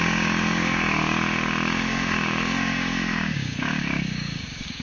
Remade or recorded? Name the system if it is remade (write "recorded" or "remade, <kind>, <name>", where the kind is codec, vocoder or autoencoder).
remade, codec, DAC